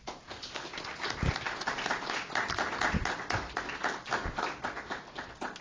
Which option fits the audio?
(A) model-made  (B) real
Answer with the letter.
B